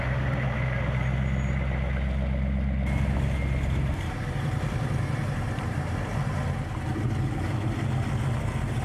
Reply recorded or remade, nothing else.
recorded